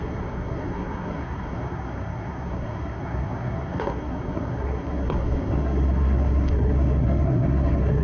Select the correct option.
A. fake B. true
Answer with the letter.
A